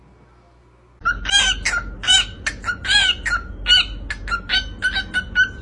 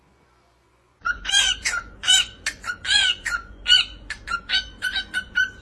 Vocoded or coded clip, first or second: second